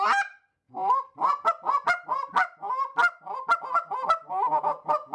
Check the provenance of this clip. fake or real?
real